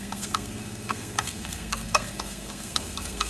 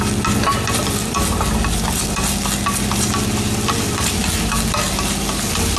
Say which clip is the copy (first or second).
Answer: first